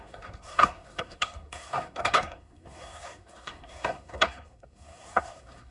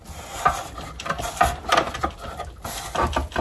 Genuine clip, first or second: second